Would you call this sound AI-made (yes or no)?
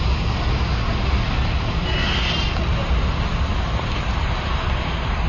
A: no